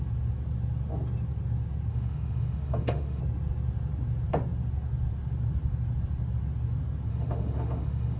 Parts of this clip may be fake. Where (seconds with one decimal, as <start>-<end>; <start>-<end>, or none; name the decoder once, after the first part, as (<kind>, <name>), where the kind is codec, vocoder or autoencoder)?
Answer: 1.9-3.2 (autoencoder, DAC-VAE); 7.1-8.2